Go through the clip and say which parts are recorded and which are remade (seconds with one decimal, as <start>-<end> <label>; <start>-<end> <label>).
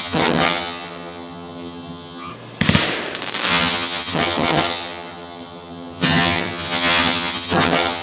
0.0-2.3 remade; 2.3-3.5 recorded; 3.5-8.0 remade